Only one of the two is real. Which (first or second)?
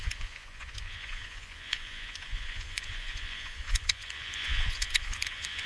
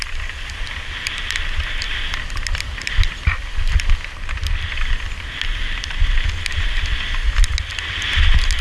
second